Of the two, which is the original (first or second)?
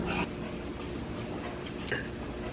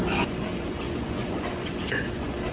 first